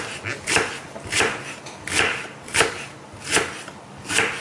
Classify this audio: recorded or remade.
recorded